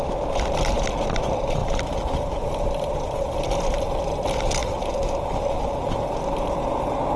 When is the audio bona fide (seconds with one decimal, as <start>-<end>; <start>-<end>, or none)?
0.0-7.2